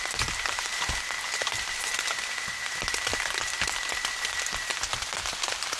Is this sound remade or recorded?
recorded